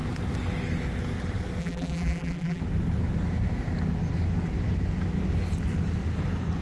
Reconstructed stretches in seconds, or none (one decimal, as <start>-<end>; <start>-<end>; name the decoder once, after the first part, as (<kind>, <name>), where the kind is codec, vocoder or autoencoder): 1.6-2.6 (vocoder, BigVGAN v2)